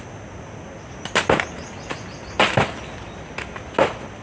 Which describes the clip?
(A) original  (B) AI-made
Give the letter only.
A